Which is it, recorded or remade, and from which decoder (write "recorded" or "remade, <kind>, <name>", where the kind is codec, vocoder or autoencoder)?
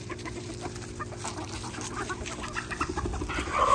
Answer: recorded